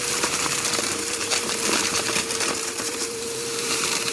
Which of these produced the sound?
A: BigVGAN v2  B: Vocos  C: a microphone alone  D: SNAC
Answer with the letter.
A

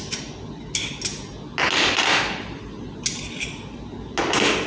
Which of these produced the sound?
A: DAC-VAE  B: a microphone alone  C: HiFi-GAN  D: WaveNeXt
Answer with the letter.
B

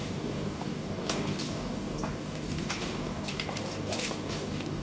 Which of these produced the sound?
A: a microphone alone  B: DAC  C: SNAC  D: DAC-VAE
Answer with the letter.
B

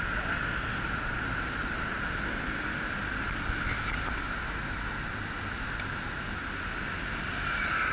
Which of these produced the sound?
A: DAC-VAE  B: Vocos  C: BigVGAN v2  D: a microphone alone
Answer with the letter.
D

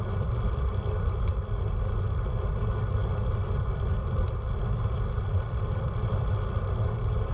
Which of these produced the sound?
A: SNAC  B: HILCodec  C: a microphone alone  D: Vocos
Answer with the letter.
C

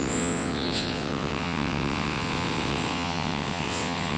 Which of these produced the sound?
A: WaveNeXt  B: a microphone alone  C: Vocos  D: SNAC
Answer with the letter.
A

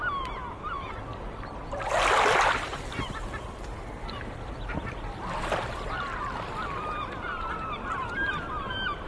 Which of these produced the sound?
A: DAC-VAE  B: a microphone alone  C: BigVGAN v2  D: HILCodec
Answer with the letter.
C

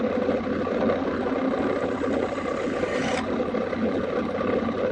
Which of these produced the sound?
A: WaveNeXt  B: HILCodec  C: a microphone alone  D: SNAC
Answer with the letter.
C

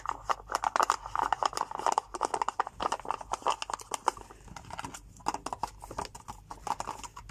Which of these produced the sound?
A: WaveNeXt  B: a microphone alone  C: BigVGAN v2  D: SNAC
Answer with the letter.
B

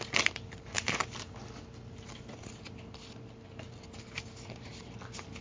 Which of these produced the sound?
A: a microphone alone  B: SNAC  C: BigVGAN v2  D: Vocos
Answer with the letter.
A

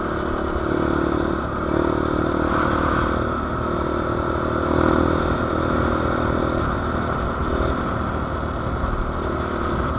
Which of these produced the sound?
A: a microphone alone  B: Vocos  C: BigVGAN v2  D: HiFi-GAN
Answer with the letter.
A